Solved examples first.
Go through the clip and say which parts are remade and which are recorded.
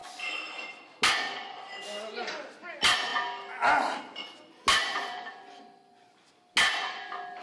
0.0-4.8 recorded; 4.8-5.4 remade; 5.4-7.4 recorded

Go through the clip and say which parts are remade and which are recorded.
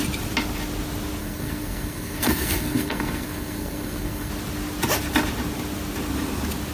0.0-1.2 recorded; 1.2-4.3 remade; 4.3-6.7 recorded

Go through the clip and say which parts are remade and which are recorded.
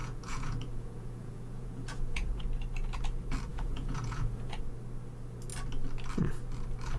0.0-2.4 remade; 2.4-3.5 recorded; 3.5-4.6 remade; 4.6-7.0 recorded